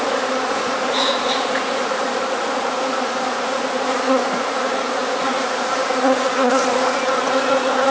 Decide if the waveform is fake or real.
fake